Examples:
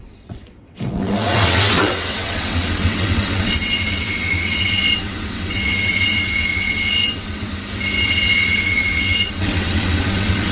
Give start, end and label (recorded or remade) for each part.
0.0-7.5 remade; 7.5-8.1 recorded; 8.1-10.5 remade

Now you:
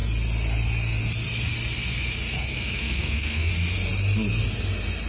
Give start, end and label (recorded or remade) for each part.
0.0-2.5 recorded; 2.5-3.5 remade; 3.5-5.1 recorded

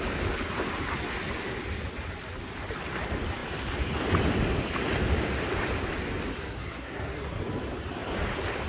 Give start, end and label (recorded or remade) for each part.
0.0-6.3 recorded; 6.3-7.4 remade; 7.4-8.7 recorded

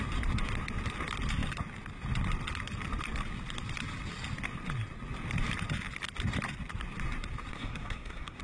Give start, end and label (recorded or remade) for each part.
0.0-7.5 recorded; 7.5-8.4 remade

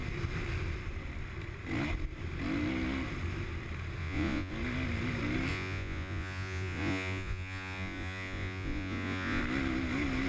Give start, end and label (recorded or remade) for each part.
0.0-4.0 recorded; 4.0-4.5 remade; 4.5-5.5 recorded; 5.5-9.4 remade; 9.4-10.3 recorded

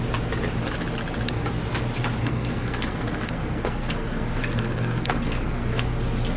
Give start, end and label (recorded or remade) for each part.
0.0-2.2 recorded; 2.2-6.0 remade; 6.0-6.4 recorded

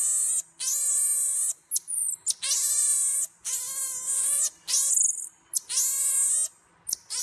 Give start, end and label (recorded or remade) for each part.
0.0-7.2 recorded